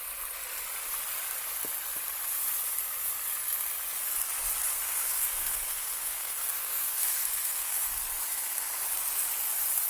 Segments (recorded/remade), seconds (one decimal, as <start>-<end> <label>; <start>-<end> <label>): 0.0-4.7 recorded; 4.7-7.9 remade; 7.9-9.9 recorded